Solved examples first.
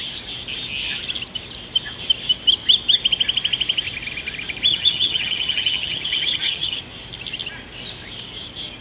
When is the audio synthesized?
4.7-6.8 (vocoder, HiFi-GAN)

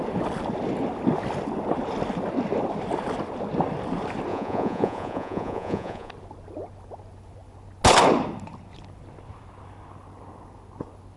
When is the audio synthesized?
4.3-6.1 (vocoder, Vocos)

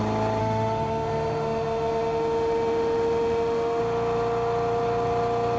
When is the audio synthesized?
0.4-3.8 (autoencoder, DAC-VAE)

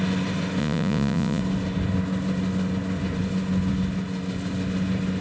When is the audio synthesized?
0.6-1.4 (vocoder, Vocos)

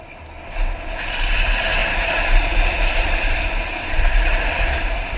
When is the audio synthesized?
1.8-5.2 (vocoder, BigVGAN v2)

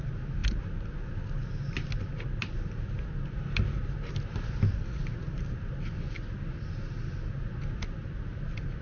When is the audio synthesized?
none

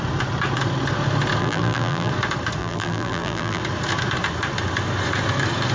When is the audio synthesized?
1.4-2.1 (vocoder, BigVGAN v2); 2.6-3.6